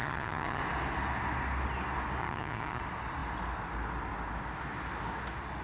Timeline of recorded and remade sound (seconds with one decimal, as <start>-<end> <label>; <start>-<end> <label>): 0.0-0.6 remade; 0.6-2.2 recorded; 2.2-2.8 remade; 2.8-5.6 recorded